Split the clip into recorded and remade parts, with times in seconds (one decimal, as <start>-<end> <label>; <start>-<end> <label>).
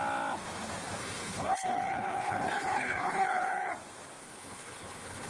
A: 0.0-1.0 recorded; 1.0-3.7 remade; 3.7-4.2 recorded; 4.2-5.3 remade